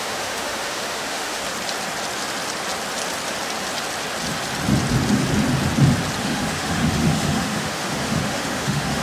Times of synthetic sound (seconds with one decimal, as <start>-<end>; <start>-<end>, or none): 0.0-1.4; 6.2-9.0